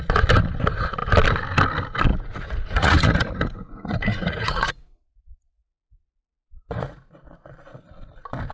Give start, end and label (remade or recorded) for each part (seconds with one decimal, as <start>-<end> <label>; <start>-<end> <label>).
0.0-2.1 recorded; 2.1-7.2 remade; 7.2-8.5 recorded

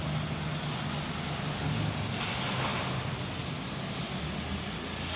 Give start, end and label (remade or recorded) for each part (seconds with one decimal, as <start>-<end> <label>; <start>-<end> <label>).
0.0-5.2 recorded

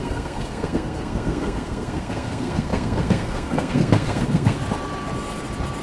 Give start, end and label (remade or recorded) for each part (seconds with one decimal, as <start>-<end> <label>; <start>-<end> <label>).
0.0-4.6 remade; 4.6-5.8 recorded

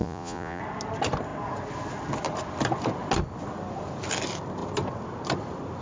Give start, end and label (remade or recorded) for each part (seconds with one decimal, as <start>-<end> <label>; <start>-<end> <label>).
0.0-0.6 remade; 0.6-5.8 recorded

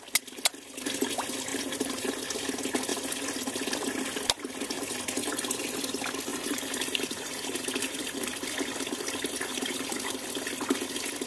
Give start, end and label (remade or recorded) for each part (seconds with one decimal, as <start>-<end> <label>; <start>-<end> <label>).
0.0-1.5 recorded; 1.5-2.1 remade; 2.1-6.3 recorded; 6.3-8.0 remade; 8.0-9.5 recorded; 9.5-10.2 remade; 10.2-11.3 recorded

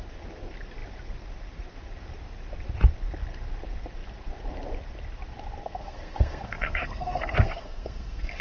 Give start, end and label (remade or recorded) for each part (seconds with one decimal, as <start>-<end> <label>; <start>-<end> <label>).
0.0-5.6 recorded; 5.6-8.4 remade

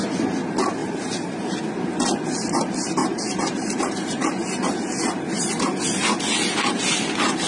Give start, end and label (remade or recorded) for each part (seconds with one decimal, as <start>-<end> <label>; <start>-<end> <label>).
0.0-0.8 recorded; 0.8-1.6 remade; 1.6-3.0 recorded; 3.0-5.8 remade; 5.8-7.5 recorded

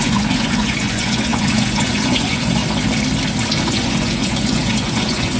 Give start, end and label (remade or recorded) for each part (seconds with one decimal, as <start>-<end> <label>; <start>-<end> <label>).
0.0-2.6 remade; 2.6-3.6 recorded; 3.6-5.4 remade